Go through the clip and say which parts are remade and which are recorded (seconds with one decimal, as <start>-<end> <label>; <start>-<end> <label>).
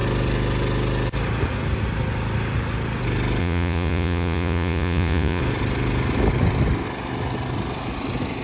0.0-3.4 recorded; 3.4-5.4 remade; 5.4-8.4 recorded